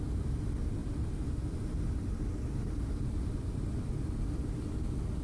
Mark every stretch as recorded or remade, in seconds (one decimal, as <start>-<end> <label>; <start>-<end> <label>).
0.0-5.2 recorded